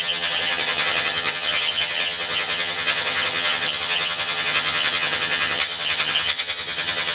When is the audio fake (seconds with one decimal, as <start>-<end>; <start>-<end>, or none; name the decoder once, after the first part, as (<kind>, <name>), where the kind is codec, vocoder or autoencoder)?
0.0-7.1 (vocoder, HiFi-GAN)